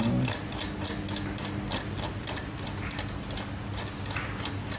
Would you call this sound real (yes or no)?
yes